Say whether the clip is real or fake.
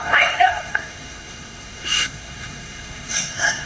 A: fake